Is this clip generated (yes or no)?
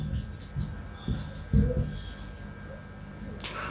no